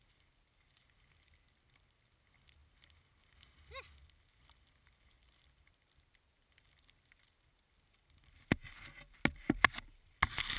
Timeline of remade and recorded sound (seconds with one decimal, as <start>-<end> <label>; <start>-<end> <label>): 0.0-10.6 recorded